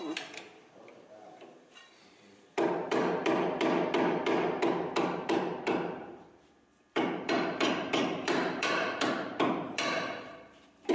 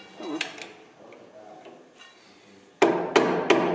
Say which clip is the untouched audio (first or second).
second